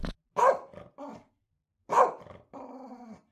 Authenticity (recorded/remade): recorded